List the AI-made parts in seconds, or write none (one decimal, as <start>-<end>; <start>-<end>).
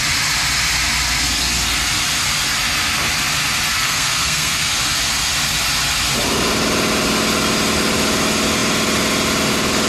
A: 3.7-4.7